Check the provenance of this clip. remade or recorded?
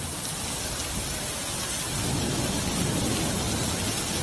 recorded